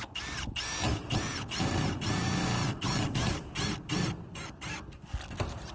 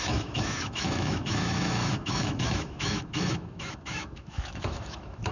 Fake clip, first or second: second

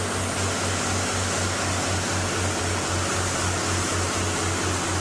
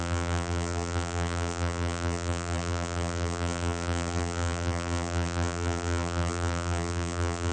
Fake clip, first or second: second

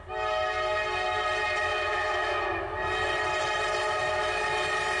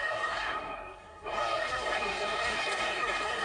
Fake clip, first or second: second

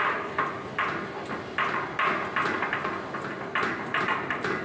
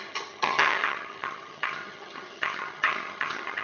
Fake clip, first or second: second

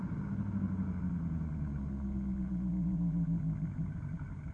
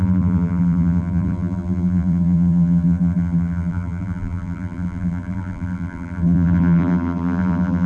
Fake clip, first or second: second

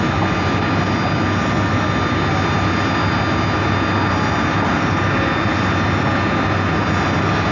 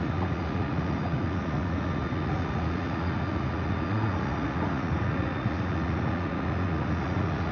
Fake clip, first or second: second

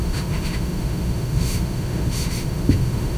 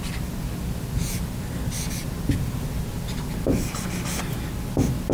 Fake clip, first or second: first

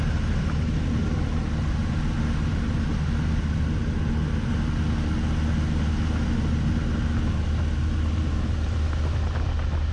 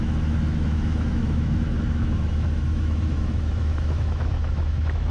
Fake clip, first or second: second